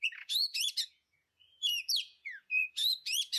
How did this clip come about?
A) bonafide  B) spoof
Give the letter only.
B